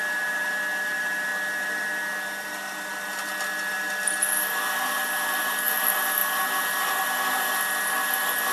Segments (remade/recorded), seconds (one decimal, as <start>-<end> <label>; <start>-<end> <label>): 0.0-8.5 recorded